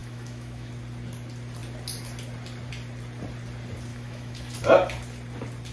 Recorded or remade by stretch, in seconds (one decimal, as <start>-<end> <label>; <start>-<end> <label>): 0.0-0.7 remade; 0.7-3.9 recorded; 3.9-4.5 remade; 4.5-5.7 recorded